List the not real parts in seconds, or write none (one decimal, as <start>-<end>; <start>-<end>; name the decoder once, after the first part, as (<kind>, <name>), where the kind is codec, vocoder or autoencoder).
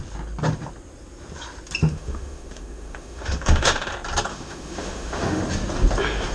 1.8-3.9 (autoencoder, DAC-VAE); 4.3-5.4